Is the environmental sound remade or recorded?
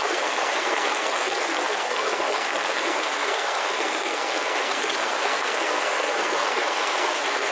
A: remade